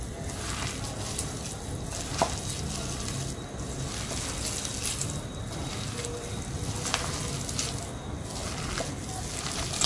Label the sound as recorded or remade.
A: recorded